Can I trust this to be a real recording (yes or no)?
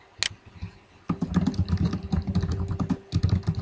yes